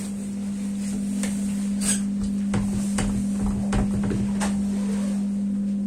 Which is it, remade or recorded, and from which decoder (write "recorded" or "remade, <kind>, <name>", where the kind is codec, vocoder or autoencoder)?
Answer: recorded